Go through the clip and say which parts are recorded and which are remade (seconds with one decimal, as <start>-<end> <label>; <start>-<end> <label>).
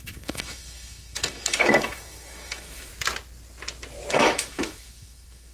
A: 0.0-2.9 remade; 2.9-4.1 recorded; 4.1-5.5 remade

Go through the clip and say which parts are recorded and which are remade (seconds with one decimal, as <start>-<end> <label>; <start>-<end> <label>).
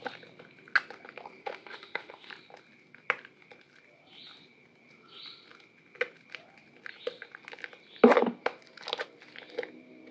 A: 0.0-1.4 recorded; 1.4-2.3 remade; 2.3-10.1 recorded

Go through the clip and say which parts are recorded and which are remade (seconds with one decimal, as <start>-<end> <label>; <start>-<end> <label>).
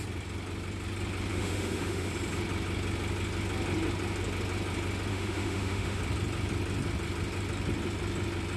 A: 0.0-1.3 recorded; 1.3-2.1 remade; 2.1-5.1 recorded; 5.1-6.0 remade; 6.0-8.6 recorded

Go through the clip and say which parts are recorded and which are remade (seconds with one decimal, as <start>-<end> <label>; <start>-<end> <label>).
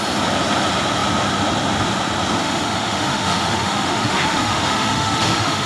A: 0.0-2.4 recorded; 2.4-5.7 remade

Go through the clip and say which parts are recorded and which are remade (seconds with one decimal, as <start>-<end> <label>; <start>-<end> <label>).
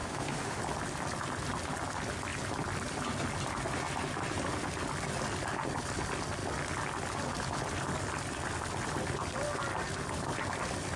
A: 0.0-0.6 remade; 0.6-11.0 recorded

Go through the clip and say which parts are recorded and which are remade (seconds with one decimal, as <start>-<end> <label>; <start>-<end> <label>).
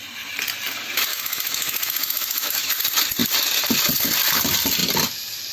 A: 0.0-1.1 recorded; 1.1-2.7 remade; 2.7-5.5 recorded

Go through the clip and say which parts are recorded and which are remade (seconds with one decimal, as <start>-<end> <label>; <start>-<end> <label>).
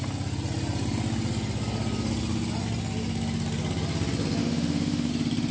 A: 0.0-4.4 recorded; 4.4-5.1 remade; 5.1-5.5 recorded